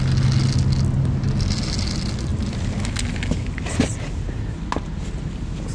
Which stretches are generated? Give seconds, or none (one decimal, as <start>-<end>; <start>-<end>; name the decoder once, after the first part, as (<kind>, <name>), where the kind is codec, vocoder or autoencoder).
none